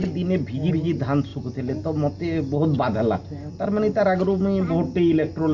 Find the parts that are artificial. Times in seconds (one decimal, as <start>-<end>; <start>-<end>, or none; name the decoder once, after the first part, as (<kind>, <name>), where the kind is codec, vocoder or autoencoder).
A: none